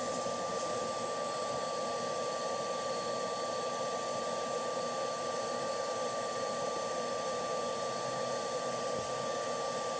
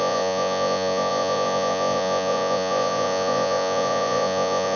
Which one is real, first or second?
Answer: first